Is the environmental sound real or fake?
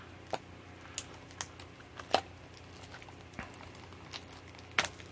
real